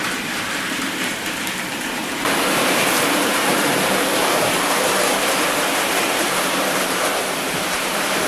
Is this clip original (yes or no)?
no